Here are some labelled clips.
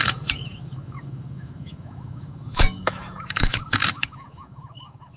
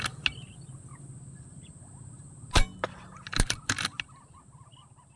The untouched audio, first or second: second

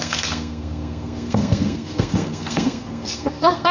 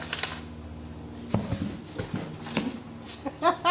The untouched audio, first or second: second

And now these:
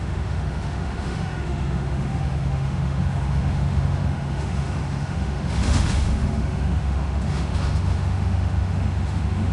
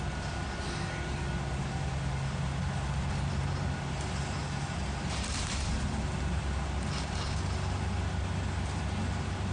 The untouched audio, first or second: second